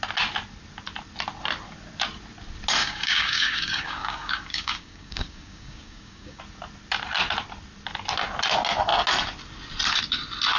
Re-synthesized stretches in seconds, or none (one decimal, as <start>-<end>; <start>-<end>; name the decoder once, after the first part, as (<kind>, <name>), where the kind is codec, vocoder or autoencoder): 2.8-6.4 (codec, DAC)